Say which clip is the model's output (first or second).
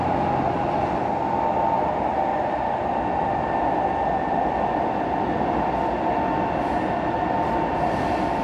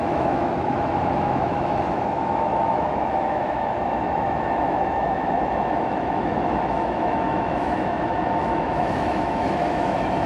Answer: second